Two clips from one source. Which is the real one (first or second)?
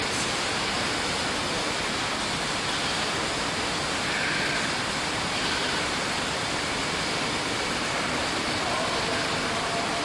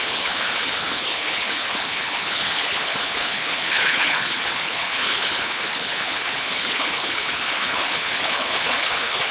first